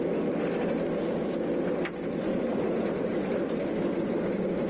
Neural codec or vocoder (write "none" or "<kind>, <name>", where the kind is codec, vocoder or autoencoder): none